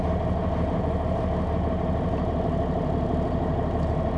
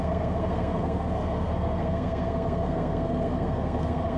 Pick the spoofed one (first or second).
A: second